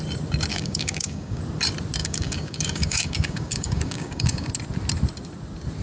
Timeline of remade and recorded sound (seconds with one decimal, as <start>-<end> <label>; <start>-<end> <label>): 0.0-0.5 recorded; 0.5-1.4 remade; 1.4-2.0 recorded; 2.0-4.5 remade; 4.5-5.8 recorded